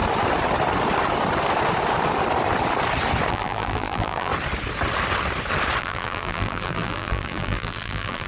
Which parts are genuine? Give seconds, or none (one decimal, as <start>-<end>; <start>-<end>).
0.0-3.3; 4.3-5.8